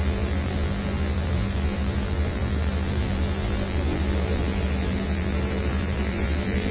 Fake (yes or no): yes